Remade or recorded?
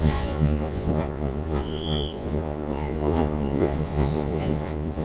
remade